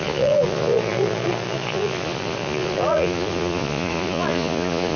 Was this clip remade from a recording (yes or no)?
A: yes